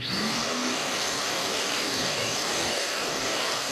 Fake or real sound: fake